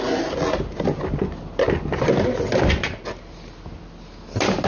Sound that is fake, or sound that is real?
real